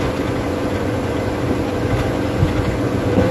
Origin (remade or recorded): remade